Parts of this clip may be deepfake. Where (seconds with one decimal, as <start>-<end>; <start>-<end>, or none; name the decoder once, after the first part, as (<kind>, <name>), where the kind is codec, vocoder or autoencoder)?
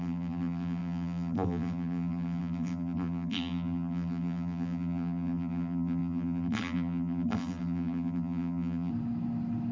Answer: 0.0-8.9 (vocoder, BigVGAN v2)